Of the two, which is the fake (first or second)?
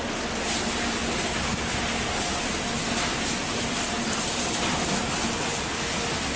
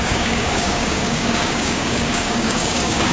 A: second